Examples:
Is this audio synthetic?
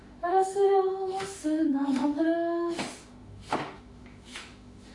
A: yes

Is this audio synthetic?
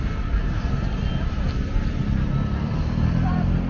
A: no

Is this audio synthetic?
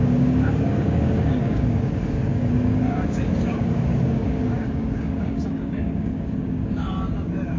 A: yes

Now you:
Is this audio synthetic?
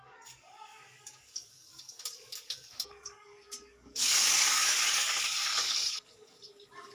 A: yes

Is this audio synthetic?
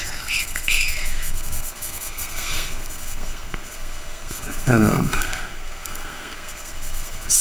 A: yes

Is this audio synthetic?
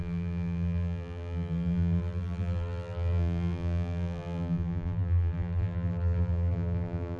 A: yes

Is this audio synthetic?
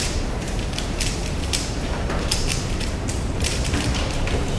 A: yes